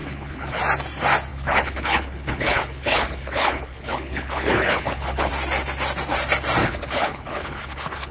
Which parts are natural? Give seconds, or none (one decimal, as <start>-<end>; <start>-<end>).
0.6-1.3; 5.3-6.6